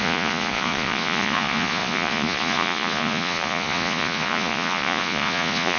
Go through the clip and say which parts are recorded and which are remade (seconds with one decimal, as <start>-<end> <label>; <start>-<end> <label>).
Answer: 0.0-5.8 remade